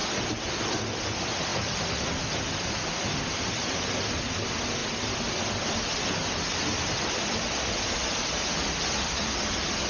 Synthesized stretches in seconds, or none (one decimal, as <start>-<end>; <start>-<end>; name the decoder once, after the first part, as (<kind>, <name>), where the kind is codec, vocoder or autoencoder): none

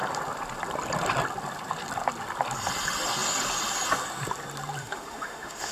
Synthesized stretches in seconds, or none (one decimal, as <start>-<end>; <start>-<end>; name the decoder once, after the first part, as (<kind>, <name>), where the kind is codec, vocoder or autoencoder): 4.8-5.7 (autoencoder, DAC-VAE)